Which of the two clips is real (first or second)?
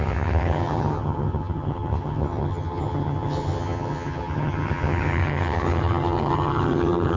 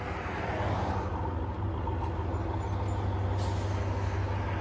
second